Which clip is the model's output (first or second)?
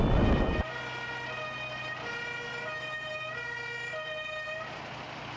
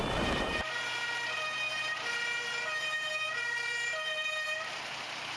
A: second